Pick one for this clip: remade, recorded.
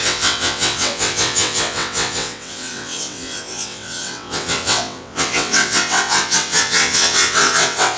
remade